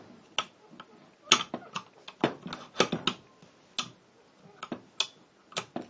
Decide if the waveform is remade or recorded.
recorded